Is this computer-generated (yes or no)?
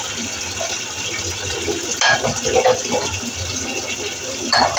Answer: no